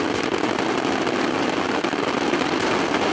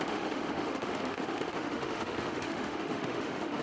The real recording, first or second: first